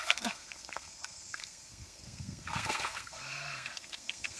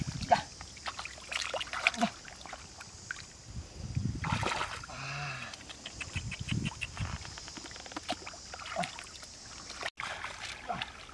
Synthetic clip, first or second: first